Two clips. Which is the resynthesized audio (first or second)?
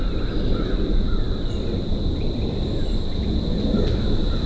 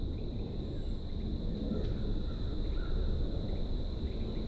first